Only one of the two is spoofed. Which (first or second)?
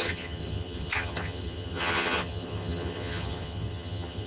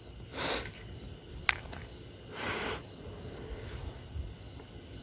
first